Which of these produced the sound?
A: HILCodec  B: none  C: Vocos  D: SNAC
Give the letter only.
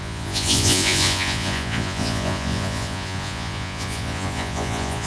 C